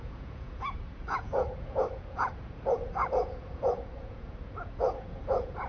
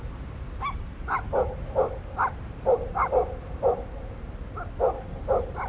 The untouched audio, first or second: second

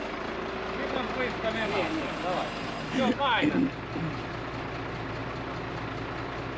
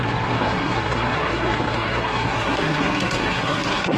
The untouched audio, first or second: first